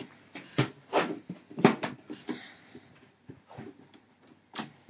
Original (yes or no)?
no